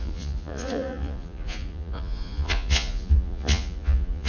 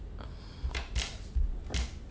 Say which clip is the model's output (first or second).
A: first